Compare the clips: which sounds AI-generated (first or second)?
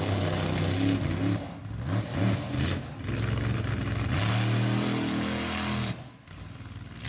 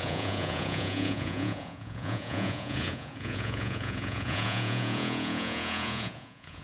second